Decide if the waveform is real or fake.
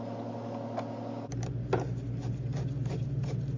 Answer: real